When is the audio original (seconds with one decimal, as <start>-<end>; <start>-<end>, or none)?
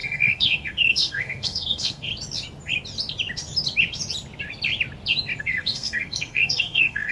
2.1-5.4